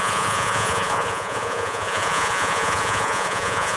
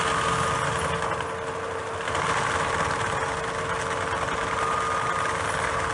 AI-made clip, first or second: first